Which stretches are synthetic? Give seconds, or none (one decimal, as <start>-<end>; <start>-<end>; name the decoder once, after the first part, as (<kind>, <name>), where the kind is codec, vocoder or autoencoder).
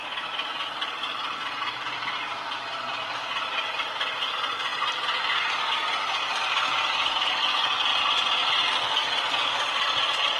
1.7-4.7 (vocoder, BigVGAN v2); 5.7-10.4